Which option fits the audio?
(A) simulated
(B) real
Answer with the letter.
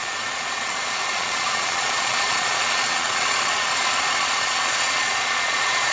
A